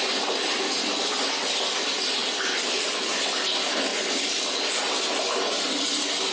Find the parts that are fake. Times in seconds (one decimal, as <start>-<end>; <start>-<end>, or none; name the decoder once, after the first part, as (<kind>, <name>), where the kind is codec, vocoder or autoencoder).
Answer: 2.2-3.1 (vocoder, BigVGAN v2); 3.9-4.9